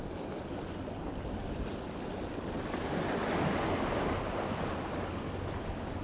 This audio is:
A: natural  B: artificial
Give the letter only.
A